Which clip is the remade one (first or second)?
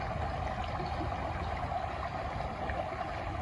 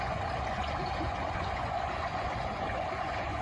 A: second